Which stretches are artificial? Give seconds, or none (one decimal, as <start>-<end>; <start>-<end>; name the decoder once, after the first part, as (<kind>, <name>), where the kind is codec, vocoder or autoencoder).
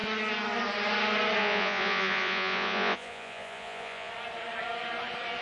1.4-4.1 (vocoder, Vocos)